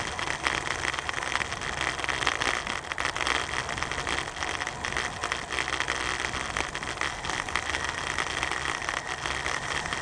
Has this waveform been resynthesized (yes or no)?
no